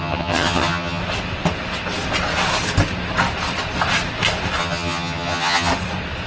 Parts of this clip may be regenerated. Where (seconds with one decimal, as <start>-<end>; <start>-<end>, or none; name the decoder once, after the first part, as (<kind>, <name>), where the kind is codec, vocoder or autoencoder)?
0.0-1.0 (vocoder, HiFi-GAN); 4.6-5.7